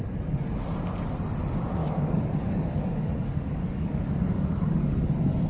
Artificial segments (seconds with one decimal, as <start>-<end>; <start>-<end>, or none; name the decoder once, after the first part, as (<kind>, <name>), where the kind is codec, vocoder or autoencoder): 1.8-5.1 (codec, DAC)